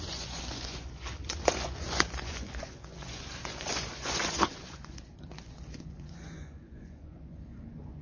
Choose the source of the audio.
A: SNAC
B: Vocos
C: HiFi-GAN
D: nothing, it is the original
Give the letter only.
B